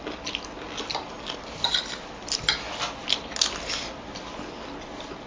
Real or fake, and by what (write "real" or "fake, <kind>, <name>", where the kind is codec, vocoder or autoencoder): real